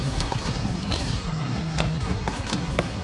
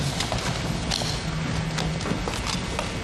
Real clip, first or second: second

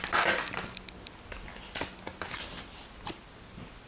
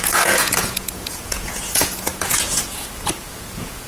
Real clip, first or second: first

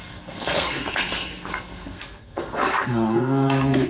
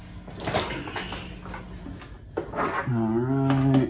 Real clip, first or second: second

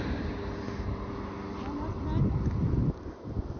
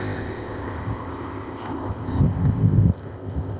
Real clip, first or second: first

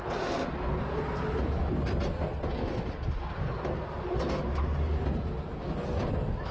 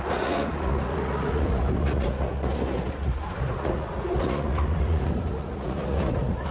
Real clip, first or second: first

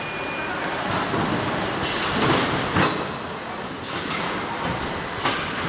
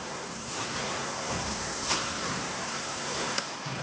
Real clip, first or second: first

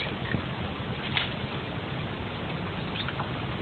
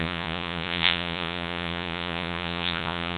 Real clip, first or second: first